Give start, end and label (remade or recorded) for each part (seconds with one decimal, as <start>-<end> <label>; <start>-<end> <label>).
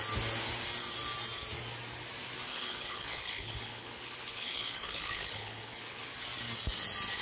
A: 0.0-2.5 recorded; 2.5-6.1 remade; 6.1-7.2 recorded